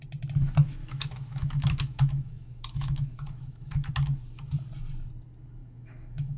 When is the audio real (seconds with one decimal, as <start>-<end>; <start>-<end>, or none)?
0.0-0.8; 3.9-5.6